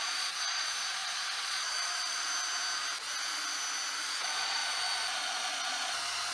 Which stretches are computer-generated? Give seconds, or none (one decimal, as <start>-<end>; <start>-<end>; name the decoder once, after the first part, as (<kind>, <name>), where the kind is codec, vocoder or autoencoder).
0.0-2.3 (vocoder, Vocos); 4.0-4.6; 5.1-6.3